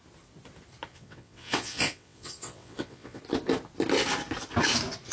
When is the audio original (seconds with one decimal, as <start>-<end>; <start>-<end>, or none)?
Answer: 0.0-0.9; 3.2-5.1